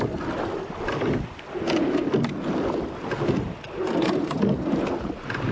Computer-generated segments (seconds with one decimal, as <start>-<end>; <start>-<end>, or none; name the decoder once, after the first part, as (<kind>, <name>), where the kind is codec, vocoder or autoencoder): none